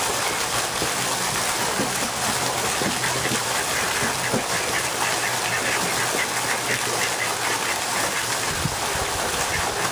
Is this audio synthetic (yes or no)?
no